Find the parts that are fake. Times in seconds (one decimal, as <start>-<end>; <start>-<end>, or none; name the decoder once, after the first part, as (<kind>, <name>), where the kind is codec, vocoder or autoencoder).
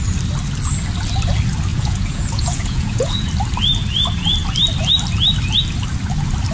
1.7-3.3 (vocoder, Vocos)